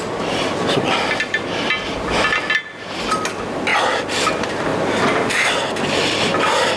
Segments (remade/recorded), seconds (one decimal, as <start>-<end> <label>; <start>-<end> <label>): 0.0-6.8 recorded